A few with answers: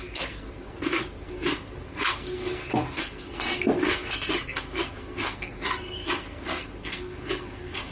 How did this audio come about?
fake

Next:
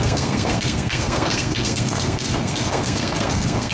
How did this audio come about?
fake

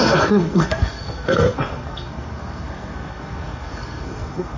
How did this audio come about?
fake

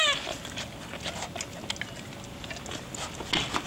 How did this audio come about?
real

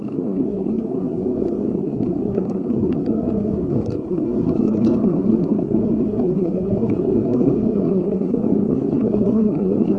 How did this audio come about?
fake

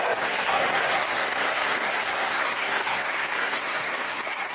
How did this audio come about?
fake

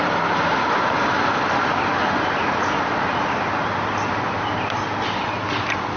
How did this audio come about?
real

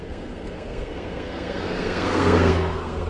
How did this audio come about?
fake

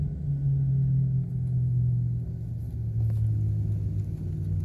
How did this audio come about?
real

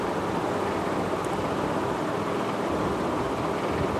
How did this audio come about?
real